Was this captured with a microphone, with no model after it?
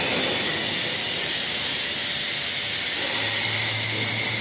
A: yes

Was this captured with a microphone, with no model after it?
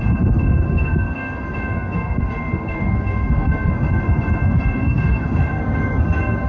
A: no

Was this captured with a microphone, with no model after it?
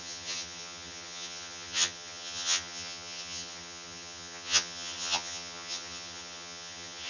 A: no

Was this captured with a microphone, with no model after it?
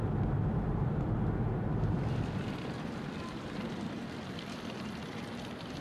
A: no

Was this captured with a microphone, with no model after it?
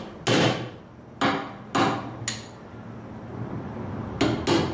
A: yes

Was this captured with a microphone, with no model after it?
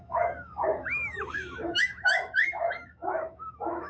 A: no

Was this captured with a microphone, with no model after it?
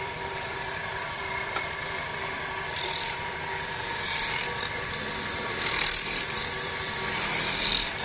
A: no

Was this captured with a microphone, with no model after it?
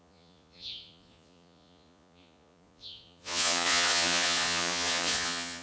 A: no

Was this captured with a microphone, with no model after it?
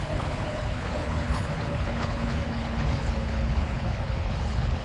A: no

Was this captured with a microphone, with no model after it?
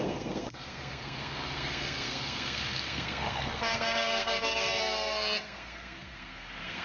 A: no